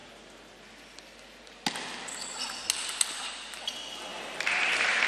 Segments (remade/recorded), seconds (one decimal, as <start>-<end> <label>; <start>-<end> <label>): 0.0-4.1 recorded; 4.1-5.1 remade